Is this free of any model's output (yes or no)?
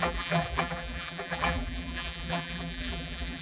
no